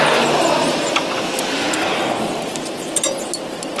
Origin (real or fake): real